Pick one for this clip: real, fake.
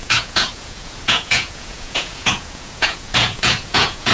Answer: fake